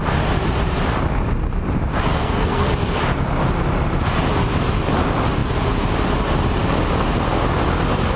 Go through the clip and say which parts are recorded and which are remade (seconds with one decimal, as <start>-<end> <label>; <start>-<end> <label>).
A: 0.0-2.1 recorded; 2.1-2.7 remade; 2.7-8.2 recorded